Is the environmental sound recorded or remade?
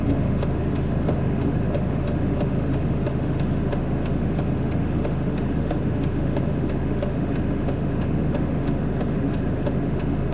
remade